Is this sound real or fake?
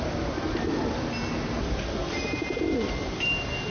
real